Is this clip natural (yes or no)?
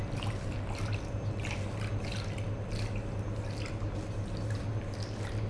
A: yes